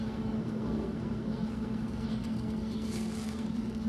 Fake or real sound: fake